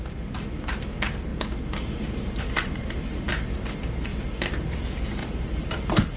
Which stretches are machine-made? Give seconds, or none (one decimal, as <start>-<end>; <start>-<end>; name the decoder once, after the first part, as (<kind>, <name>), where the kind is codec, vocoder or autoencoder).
5.2-6.2 (vocoder, BigVGAN v2)